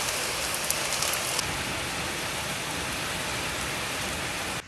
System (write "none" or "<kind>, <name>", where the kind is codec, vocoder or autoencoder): none